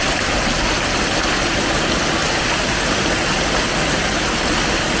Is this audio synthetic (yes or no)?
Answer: no